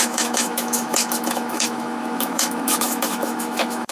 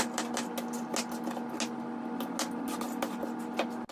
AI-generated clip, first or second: first